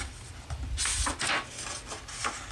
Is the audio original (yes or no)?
yes